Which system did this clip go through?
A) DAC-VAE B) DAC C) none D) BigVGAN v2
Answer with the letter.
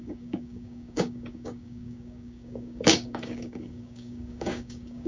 B